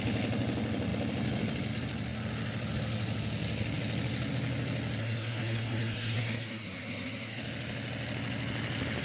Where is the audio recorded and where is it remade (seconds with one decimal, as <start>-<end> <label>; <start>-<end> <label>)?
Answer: 0.0-5.0 recorded; 5.0-7.4 remade; 7.4-9.0 recorded